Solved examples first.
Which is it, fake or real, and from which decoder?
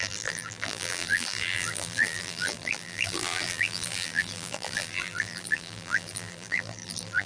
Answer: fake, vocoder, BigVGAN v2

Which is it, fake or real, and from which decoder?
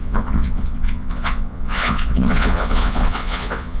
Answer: fake, vocoder, Vocos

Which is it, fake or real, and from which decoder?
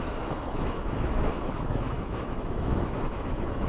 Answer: fake, autoencoder, DAC-VAE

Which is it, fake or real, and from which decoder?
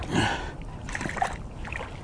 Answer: real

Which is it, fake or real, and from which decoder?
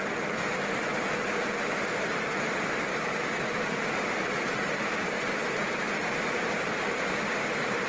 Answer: fake, vocoder, BigVGAN v2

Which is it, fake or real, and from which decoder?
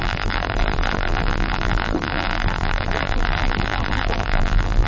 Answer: fake, vocoder, BigVGAN v2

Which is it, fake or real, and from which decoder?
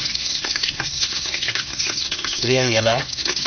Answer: fake, codec, SNAC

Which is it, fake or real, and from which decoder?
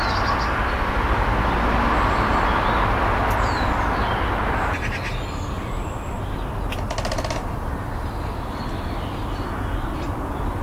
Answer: real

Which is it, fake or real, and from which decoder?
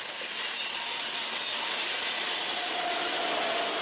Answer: real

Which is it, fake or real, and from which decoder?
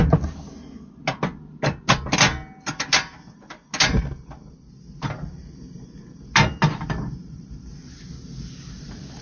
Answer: real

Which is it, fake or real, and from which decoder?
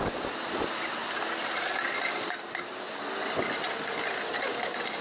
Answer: real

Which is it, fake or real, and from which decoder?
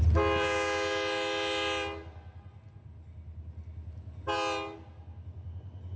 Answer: real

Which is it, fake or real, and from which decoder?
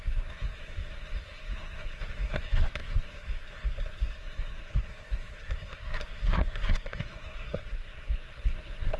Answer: fake, codec, SNAC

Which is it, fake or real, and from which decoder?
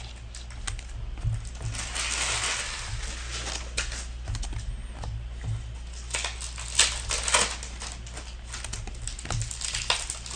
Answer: real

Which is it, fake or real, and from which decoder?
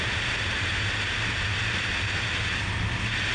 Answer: real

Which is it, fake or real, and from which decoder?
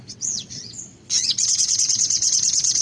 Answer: fake, vocoder, WaveNeXt